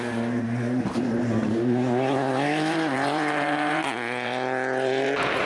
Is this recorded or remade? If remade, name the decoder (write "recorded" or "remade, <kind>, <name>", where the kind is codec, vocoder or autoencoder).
remade, vocoder, BigVGAN v2